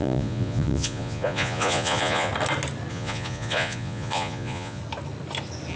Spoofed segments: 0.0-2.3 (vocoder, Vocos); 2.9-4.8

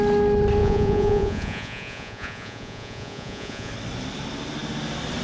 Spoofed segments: 0.6-3.7 (vocoder, Vocos)

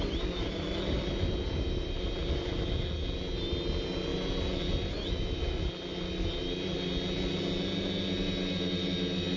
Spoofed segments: none

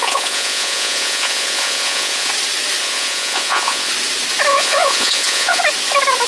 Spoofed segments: 0.0-2.3 (vocoder, Vocos); 2.8-3.9; 4.5-5.6